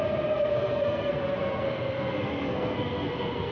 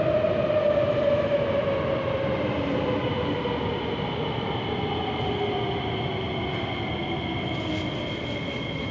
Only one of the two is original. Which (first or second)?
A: second